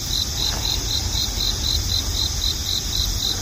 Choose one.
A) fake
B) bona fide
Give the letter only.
A